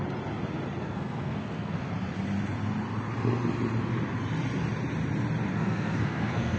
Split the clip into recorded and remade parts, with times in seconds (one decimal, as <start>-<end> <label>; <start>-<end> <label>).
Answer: 0.0-0.8 recorded; 0.8-1.9 remade; 1.9-5.5 recorded; 5.5-6.6 remade